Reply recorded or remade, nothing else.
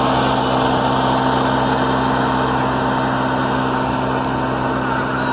recorded